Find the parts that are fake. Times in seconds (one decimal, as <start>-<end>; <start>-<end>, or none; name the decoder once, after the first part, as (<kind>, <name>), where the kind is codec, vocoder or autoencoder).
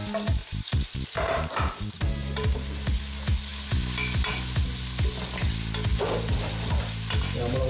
0.4-3.0 (vocoder, BigVGAN v2); 5.9-6.7